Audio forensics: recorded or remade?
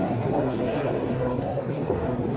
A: remade